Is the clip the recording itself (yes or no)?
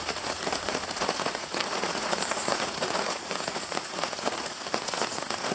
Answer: no